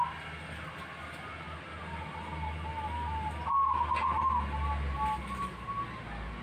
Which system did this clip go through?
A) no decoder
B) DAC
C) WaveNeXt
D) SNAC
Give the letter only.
A